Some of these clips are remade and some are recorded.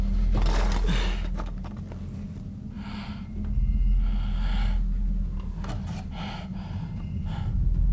recorded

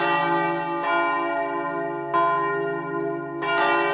recorded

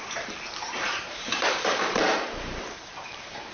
remade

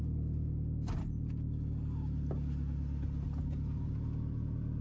recorded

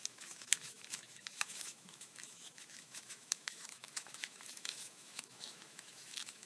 remade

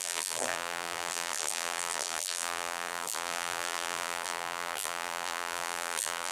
remade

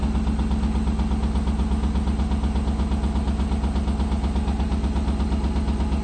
recorded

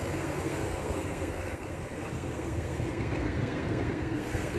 remade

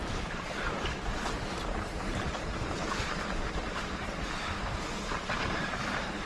remade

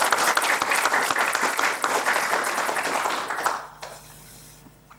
recorded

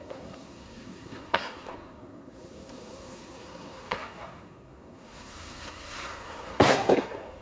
remade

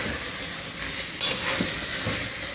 recorded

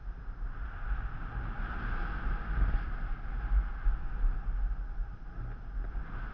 recorded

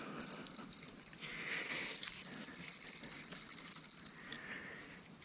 recorded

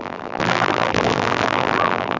remade